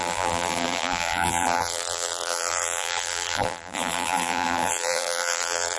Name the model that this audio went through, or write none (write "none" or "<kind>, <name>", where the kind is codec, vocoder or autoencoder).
vocoder, BigVGAN v2